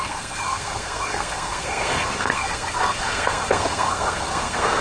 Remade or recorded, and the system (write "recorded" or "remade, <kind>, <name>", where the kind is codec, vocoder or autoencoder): remade, codec, SNAC